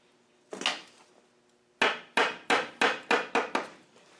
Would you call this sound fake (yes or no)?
no